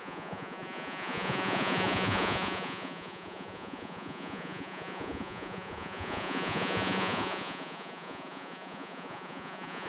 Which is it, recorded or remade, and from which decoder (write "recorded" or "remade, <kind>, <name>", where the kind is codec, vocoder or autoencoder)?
remade, vocoder, Vocos